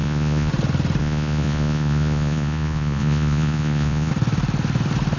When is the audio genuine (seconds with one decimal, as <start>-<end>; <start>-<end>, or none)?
0.5-1.0; 4.1-5.2